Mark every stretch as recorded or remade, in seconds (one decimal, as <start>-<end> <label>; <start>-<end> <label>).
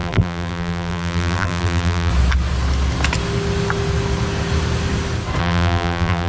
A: 0.0-2.1 remade; 2.1-5.4 recorded; 5.4-6.3 remade